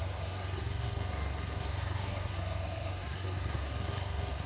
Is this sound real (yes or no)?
no